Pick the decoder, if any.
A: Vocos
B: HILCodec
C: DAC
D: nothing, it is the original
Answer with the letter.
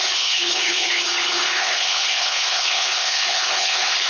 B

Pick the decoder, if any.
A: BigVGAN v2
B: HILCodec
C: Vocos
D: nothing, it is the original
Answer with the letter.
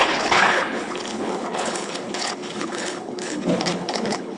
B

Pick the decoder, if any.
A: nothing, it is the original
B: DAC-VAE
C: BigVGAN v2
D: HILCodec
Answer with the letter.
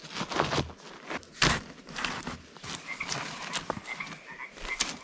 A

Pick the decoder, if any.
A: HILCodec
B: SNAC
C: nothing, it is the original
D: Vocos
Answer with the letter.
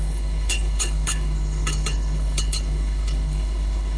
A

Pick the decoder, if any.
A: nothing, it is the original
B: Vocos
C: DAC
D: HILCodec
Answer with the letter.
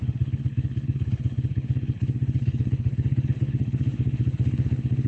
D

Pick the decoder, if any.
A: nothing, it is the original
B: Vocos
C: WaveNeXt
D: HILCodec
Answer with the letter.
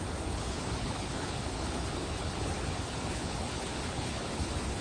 D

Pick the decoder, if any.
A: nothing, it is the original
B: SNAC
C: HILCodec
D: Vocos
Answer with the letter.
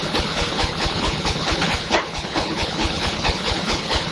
C